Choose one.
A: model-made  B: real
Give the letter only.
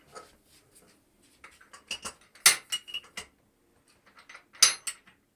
B